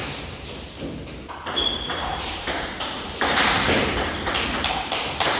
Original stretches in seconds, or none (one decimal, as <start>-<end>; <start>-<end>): 0.0-2.1